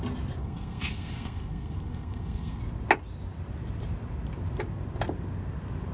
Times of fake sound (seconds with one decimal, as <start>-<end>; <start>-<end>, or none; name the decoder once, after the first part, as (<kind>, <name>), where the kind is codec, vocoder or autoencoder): 0.4-2.6 (codec, SNAC)